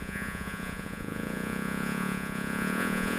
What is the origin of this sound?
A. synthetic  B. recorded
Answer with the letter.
A